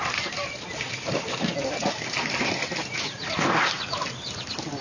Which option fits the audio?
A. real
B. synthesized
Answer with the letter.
A